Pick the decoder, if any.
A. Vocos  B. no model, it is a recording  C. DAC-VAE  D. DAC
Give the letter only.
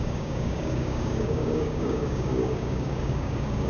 D